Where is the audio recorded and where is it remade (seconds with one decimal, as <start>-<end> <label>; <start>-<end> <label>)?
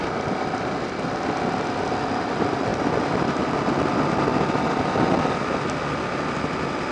0.0-6.9 recorded